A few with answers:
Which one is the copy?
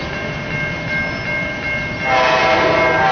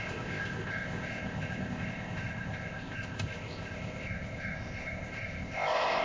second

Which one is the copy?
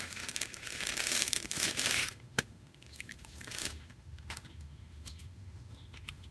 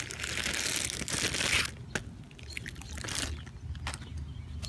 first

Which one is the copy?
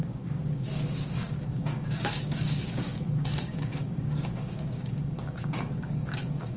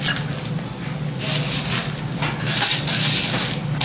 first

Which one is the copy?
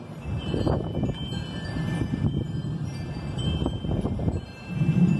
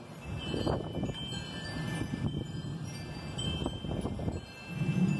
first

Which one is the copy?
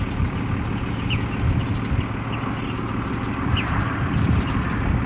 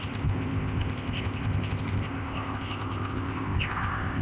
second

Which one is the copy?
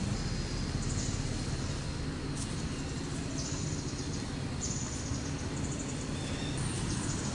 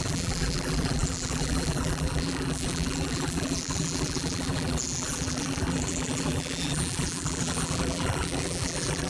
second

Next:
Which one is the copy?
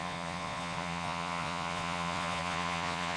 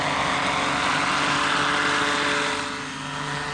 first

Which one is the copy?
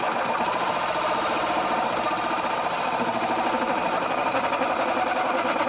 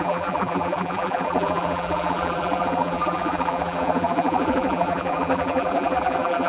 second